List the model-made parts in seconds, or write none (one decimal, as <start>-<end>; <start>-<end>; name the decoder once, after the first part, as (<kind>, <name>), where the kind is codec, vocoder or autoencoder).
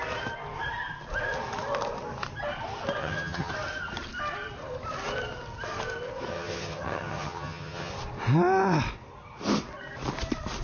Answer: 3.0-3.5 (vocoder, HiFi-GAN); 6.3-7.9